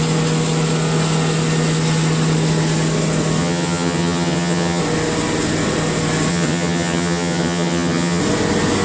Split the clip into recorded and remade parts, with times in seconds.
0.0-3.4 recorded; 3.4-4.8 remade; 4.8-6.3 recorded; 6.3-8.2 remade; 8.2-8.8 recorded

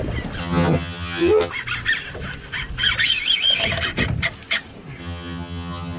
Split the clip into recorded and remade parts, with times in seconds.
0.0-0.4 recorded; 0.4-1.5 remade; 1.5-5.0 recorded; 5.0-6.0 remade

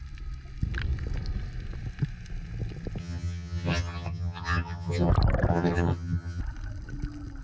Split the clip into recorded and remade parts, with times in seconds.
0.0-3.0 recorded; 3.0-5.1 remade; 5.1-5.5 recorded; 5.5-6.4 remade; 6.4-7.4 recorded